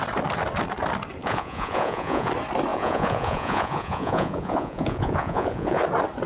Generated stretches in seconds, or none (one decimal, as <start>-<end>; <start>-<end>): 1.2-2.3; 2.7-5.8